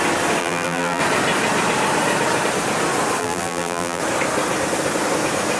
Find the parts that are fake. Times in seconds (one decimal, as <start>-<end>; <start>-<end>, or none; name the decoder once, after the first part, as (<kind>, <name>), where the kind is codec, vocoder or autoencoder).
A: 0.4-1.0 (vocoder, BigVGAN v2); 3.2-4.0